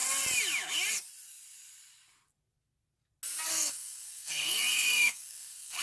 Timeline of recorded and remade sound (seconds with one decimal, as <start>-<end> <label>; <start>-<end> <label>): 0.0-3.5 recorded; 3.5-5.8 remade